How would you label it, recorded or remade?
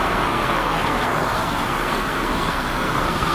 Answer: remade